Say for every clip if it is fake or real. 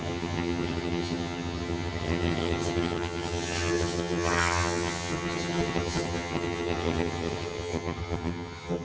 fake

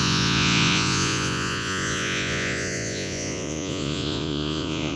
fake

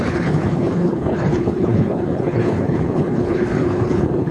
fake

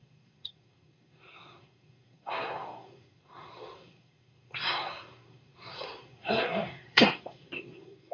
fake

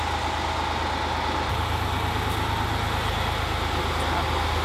real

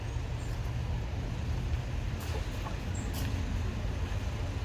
real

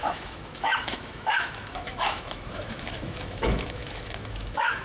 fake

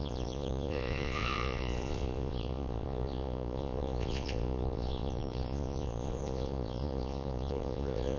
fake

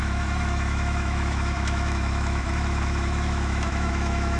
fake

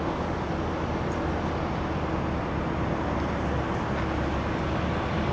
real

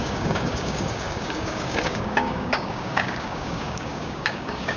fake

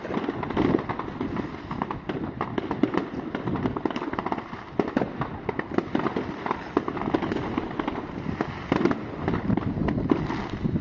real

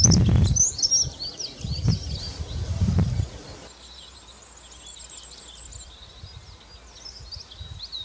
real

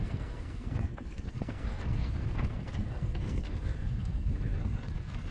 fake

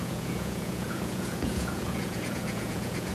fake